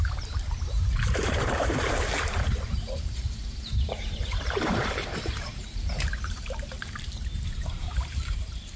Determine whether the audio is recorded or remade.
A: remade